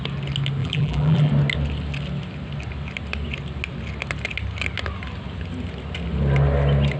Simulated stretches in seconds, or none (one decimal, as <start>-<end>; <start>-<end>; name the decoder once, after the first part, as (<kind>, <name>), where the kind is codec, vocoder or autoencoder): 0.6-1.3 (vocoder, BigVGAN v2)